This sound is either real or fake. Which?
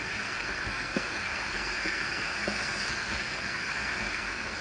fake